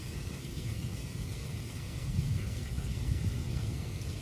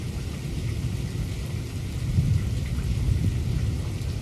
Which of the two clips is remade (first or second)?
first